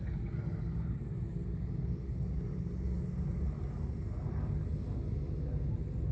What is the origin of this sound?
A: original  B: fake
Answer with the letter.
A